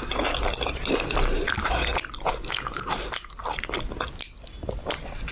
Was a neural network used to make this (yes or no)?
no